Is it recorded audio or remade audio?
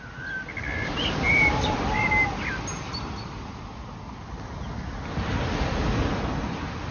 recorded